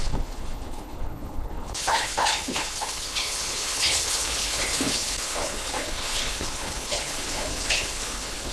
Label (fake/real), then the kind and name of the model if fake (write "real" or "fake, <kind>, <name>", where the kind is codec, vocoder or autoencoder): fake, codec, HILCodec